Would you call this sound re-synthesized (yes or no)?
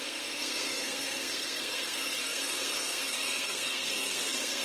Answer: yes